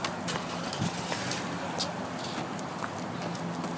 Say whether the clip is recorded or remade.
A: recorded